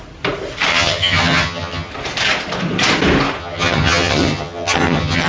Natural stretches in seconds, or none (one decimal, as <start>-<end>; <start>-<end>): 0.0-0.7; 1.9-3.4